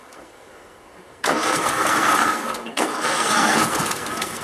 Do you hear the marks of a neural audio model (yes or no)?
yes